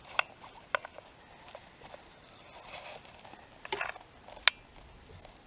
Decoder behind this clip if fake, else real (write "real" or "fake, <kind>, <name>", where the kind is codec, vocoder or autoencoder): real